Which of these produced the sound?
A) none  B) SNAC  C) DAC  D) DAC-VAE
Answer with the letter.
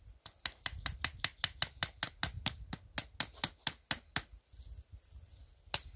A